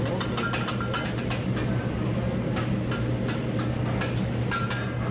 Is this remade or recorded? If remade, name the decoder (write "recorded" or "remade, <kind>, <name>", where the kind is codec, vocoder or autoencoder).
recorded